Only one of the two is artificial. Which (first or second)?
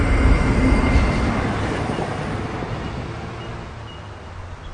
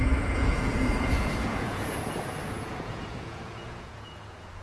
second